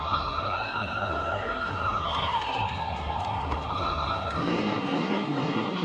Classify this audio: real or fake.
fake